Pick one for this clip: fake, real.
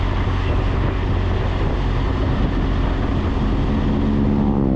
real